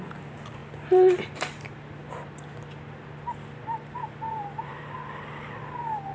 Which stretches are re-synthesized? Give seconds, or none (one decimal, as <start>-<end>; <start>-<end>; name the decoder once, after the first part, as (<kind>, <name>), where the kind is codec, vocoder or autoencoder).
0.6-4.3 (vocoder, BigVGAN v2); 4.7-5.6